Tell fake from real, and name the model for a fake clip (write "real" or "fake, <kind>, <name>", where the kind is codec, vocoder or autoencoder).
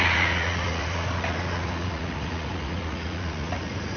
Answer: fake, vocoder, Vocos